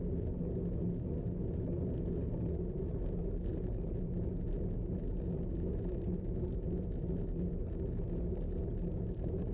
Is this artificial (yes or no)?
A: no